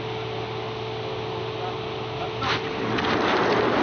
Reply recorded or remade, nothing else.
recorded